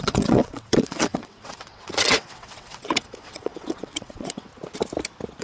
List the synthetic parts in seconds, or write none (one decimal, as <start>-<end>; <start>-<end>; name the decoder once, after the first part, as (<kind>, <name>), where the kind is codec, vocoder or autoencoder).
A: 0.0-4.5 (vocoder, WaveNeXt)